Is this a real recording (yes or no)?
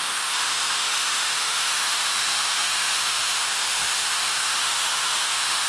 no